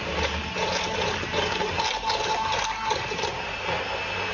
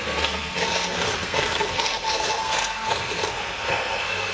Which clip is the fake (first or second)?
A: second